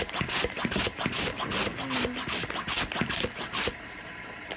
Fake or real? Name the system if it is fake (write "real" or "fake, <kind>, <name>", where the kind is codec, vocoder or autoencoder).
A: real